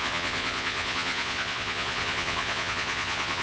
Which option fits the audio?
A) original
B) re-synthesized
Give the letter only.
B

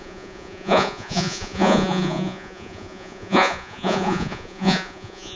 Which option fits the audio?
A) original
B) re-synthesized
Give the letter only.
B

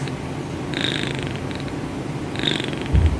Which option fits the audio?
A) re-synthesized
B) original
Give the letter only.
B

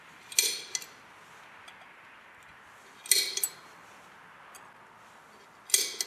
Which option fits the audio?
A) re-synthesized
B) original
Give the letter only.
B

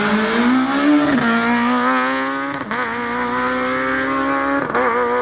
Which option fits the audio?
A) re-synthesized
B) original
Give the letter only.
B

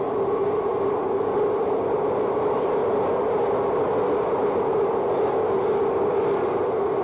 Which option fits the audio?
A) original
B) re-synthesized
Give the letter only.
A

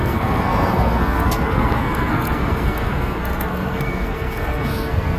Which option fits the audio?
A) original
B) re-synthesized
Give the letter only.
B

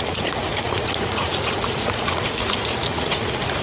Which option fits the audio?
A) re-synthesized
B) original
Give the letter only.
A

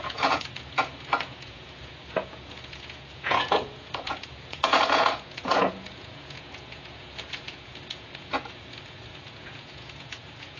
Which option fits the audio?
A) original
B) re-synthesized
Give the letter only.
B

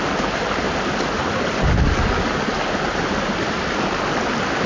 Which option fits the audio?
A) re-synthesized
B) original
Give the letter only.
B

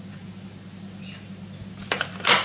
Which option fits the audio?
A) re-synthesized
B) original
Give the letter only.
B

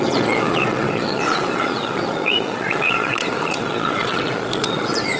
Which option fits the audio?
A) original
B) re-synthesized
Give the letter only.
B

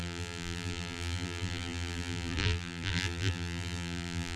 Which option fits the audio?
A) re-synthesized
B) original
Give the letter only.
A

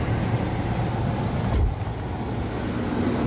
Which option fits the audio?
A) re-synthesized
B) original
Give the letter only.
B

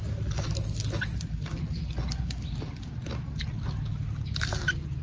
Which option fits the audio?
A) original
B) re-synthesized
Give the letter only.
A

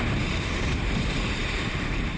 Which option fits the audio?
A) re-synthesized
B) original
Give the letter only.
A